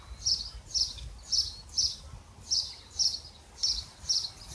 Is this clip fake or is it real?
real